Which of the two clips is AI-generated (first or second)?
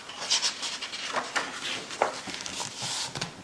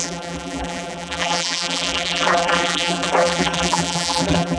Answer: second